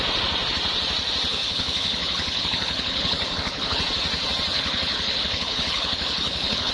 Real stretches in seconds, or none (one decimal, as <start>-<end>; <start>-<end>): 0.0-1.3; 3.8-4.5